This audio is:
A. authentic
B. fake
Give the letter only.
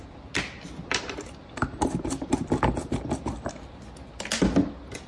A